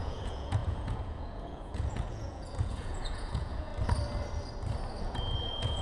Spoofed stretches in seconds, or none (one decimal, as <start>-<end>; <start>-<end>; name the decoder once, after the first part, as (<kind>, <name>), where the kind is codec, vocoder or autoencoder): 0.0-3.7 (vocoder, Vocos); 5.0-5.8